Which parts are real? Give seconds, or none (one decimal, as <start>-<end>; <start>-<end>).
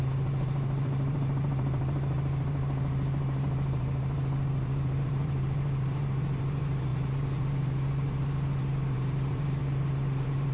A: none